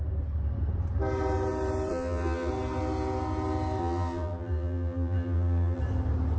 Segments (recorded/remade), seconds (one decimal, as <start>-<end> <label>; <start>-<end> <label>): 0.0-1.9 recorded; 1.9-2.5 remade; 2.5-3.8 recorded; 3.8-5.8 remade; 5.8-6.4 recorded